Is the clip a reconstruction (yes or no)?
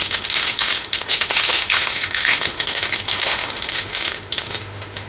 yes